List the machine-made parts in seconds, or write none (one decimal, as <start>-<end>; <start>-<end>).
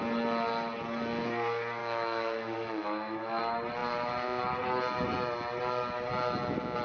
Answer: 1.8-3.4